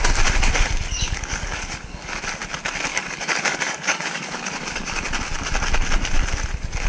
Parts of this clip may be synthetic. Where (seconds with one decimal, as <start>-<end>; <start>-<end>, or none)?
0.9-2.2; 2.9-5.0